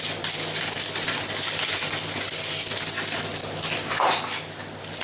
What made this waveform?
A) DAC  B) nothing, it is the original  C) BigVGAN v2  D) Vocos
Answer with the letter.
B